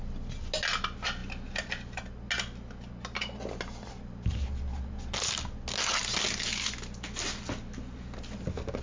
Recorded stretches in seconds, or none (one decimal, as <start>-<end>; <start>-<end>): 0.0-8.8